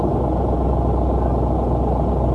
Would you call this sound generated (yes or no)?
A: no